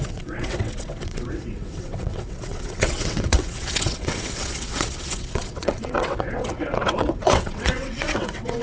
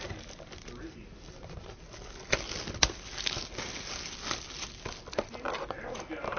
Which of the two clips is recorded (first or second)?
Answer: second